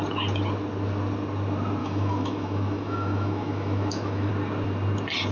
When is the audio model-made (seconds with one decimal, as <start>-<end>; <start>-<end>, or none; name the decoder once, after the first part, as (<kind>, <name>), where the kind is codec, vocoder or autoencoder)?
1.8-4.3 (autoencoder, DAC-VAE)